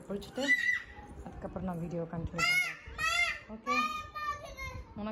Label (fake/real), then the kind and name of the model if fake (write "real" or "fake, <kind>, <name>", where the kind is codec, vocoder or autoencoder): real